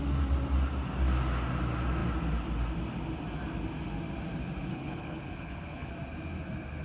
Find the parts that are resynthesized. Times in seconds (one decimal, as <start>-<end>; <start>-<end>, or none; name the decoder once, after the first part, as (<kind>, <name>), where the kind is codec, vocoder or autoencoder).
4.7-5.9 (codec, HILCodec)